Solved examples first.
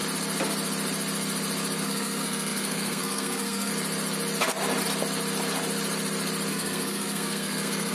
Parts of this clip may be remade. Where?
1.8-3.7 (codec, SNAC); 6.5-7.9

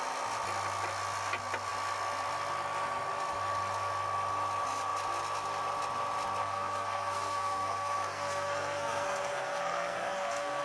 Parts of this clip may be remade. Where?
6.4-10.6 (codec, SNAC)

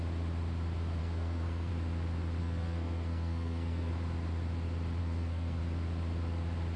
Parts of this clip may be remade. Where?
1.0-1.7 (codec, SNAC); 2.4-3.9; 5.0-5.6

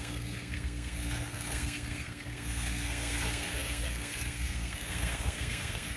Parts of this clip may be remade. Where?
0.0-6.0 (codec, SNAC)

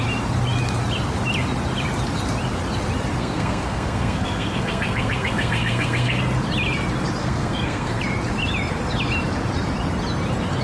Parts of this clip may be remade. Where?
3.2-6.2 (codec, SNAC); 7.2-8.0

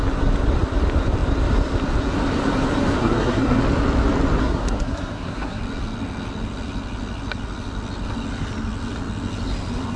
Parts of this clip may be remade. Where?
3.0-3.6 (codec, SNAC); 4.4-5.6

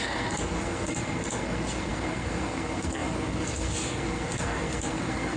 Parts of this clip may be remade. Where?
0.0-5.4 (codec, SNAC)